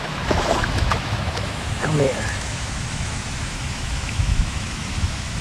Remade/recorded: remade